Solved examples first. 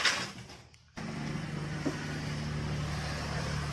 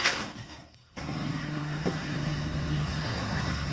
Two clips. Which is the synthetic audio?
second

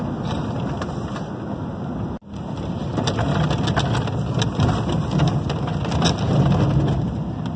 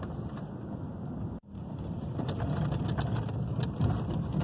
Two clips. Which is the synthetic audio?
second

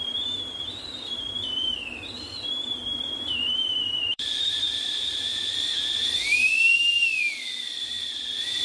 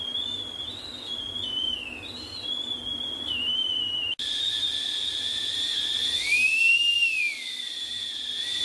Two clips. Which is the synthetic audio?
first